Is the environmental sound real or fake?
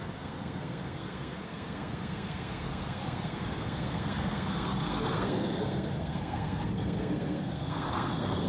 fake